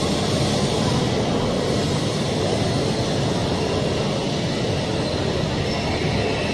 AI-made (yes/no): no